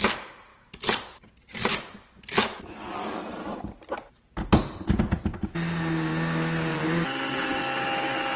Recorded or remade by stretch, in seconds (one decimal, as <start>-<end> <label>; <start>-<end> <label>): 0.0-0.5 recorded; 0.5-2.2 remade; 2.2-3.5 recorded; 3.5-5.0 remade; 5.0-6.7 recorded; 6.7-7.6 remade; 7.6-8.4 recorded